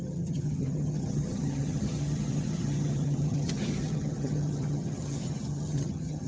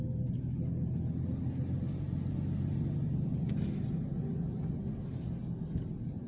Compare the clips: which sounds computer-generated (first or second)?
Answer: first